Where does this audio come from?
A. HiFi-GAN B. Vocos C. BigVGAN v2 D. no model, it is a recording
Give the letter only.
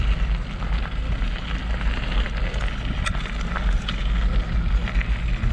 D